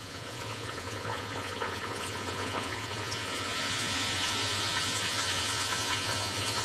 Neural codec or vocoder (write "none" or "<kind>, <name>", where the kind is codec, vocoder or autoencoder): vocoder, Vocos